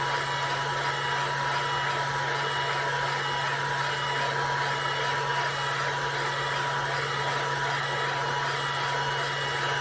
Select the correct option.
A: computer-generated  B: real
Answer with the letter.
B